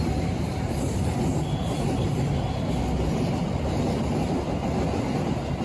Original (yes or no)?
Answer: yes